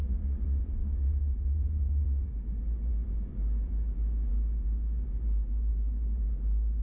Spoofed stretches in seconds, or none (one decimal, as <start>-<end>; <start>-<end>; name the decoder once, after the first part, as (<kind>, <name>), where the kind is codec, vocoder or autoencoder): 0.0-2.3 (vocoder, Vocos)

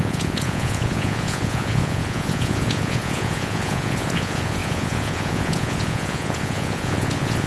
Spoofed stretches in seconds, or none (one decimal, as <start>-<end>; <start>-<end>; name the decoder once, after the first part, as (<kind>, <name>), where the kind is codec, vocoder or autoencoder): 0.0-7.5 (vocoder, Vocos)

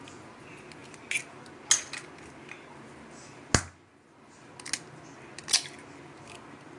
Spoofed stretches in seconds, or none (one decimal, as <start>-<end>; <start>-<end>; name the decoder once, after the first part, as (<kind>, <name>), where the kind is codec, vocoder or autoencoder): none

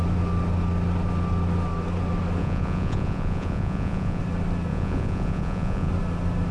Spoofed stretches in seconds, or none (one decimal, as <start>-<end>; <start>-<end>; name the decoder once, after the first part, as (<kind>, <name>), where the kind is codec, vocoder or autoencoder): 2.4-4.2 (vocoder, Vocos); 4.7-5.9

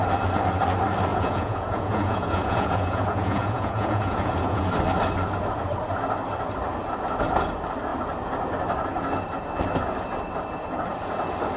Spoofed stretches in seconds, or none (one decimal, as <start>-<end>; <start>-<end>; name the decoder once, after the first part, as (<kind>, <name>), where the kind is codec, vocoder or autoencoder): 1.1-4.7 (vocoder, Vocos)

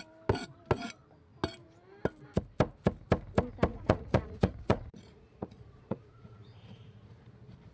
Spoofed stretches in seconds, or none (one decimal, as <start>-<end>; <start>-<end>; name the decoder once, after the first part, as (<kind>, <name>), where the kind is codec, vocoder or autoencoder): 3.7-7.3 (vocoder, Vocos)

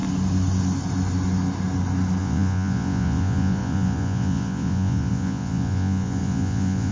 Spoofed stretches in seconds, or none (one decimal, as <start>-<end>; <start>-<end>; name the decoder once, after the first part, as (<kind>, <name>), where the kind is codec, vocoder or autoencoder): 2.2-6.9 (vocoder, Vocos)

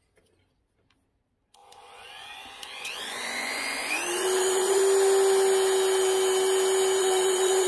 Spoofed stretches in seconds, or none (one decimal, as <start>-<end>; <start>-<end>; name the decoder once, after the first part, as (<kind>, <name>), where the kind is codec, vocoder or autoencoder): 1.6-4.8 (vocoder, Vocos); 7.0-7.7